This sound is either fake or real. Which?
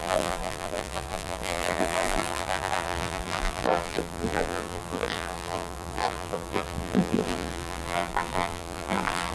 fake